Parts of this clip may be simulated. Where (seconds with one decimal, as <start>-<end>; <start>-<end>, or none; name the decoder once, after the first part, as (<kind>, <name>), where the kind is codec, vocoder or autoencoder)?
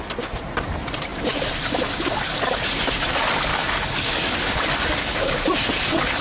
3.5-5.4 (codec, DAC)